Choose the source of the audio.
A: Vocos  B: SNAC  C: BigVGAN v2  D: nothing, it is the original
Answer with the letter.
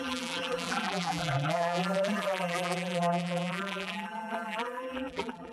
C